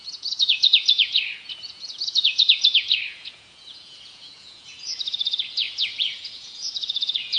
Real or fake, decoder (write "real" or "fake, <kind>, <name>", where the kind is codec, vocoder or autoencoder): fake, vocoder, Vocos